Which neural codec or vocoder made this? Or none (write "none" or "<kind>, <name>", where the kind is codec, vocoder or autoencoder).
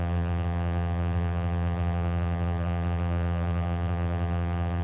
vocoder, BigVGAN v2